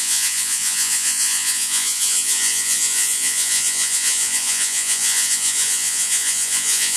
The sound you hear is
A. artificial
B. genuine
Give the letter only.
A